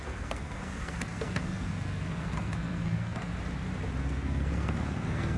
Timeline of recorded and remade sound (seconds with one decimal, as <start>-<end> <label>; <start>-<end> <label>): 0.0-3.3 remade; 3.3-4.0 recorded; 4.0-5.4 remade